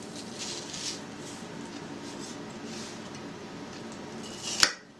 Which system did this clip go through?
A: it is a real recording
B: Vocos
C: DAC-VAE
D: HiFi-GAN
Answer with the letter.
A